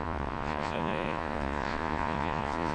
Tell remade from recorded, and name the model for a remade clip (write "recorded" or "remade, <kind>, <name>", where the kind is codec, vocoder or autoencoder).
remade, vocoder, Vocos